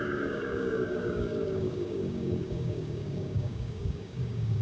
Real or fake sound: fake